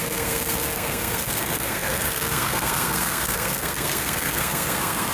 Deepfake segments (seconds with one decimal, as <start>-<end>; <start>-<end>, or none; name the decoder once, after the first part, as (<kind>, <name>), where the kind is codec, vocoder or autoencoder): 0.0-5.1 (codec, SNAC)